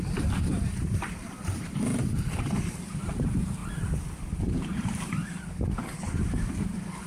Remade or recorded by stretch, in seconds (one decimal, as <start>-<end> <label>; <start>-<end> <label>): 0.0-1.9 remade; 1.9-2.7 recorded; 2.7-3.6 remade; 3.6-4.2 recorded; 4.2-5.2 remade; 5.2-6.5 recorded; 6.5-7.1 remade